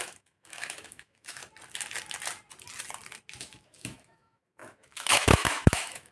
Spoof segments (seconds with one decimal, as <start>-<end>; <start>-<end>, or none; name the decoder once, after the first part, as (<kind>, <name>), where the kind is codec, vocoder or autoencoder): 0.0-1.4 (autoencoder, DAC-VAE); 3.4-6.1